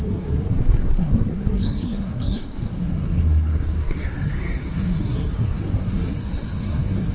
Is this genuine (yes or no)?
no